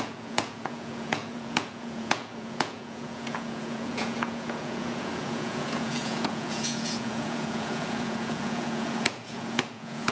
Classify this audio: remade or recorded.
remade